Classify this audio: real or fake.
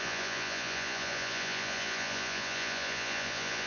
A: fake